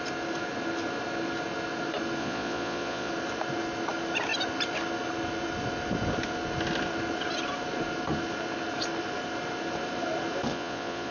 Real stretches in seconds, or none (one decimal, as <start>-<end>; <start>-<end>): 0.0-2.2; 3.1-10.5

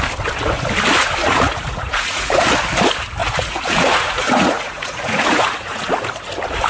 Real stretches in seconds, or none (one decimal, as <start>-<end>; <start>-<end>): 0.0-1.2; 2.4-3.2; 5.9-6.7

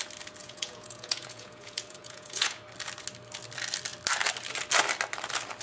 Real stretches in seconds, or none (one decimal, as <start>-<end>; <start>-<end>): 0.0-0.4; 2.6-5.6